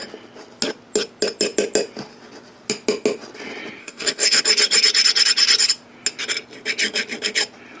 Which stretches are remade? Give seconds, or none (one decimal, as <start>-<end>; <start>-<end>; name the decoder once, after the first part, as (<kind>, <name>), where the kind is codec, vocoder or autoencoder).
3.8-4.4 (codec, DAC)